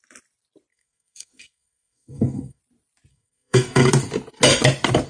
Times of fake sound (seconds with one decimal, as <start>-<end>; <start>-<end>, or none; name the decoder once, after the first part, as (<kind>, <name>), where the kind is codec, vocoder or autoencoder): 0.7-2.6 (codec, SNAC); 3.1-3.9